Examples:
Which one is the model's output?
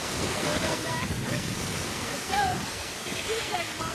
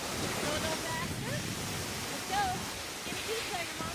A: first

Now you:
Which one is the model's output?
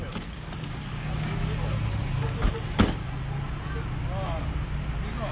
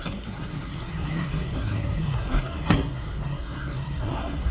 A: second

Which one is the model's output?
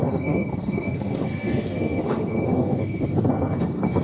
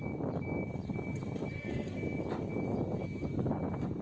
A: first